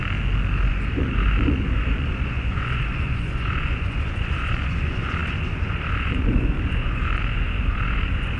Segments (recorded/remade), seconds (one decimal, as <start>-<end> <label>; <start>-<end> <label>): 0.0-0.7 recorded; 0.7-8.4 remade